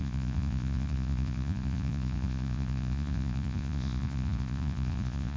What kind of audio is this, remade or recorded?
remade